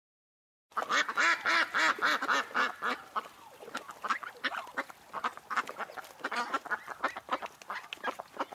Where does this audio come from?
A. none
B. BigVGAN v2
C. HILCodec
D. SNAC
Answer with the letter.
A